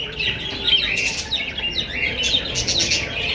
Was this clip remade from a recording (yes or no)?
no